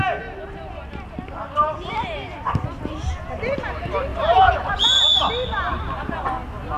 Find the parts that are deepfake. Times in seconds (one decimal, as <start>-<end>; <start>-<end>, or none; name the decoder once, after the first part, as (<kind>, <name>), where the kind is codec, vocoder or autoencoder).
1.6-3.1 (vocoder, BigVGAN v2); 4.1-5.0